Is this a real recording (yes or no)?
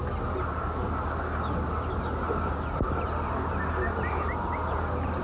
yes